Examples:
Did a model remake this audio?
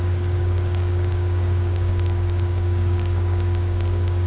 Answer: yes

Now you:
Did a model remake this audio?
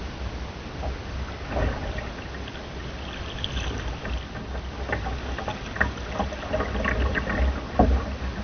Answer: no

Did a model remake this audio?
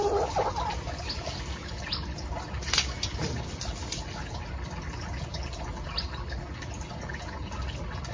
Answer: no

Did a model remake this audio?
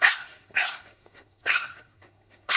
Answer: yes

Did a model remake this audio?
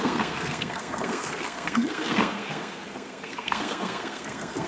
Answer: yes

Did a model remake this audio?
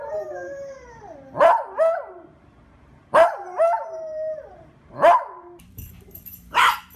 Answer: yes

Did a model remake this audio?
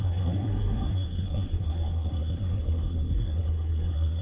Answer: yes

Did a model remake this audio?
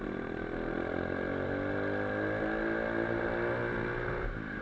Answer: no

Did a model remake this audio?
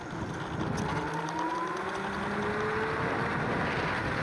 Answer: no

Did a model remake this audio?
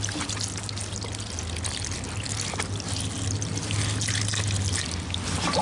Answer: no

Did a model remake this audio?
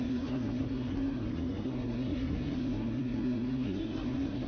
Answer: yes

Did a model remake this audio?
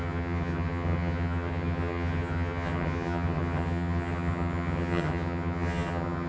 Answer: yes